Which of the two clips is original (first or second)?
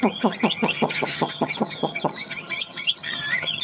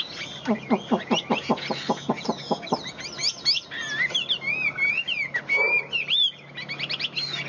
second